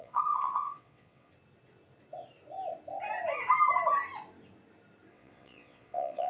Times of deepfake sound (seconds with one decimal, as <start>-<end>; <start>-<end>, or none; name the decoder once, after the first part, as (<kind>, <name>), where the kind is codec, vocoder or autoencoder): 0.0-1.3 (vocoder, WaveNeXt); 5.1-6.3